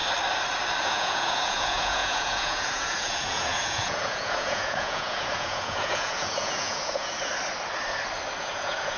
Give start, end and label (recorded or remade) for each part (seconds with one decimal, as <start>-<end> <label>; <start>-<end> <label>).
0.0-0.8 recorded; 0.8-7.3 remade; 7.3-8.4 recorded; 8.4-9.0 remade